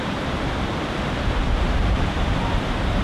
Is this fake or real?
fake